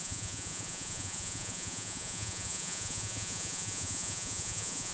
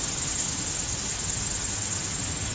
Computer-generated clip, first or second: first